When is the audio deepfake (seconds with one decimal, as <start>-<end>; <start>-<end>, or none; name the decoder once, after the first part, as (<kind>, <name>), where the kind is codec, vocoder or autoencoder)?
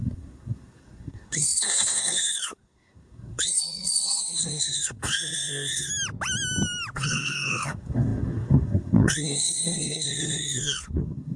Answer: 0.0-5.9 (codec, SNAC); 6.9-11.4